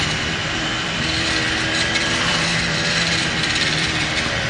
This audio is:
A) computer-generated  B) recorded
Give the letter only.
A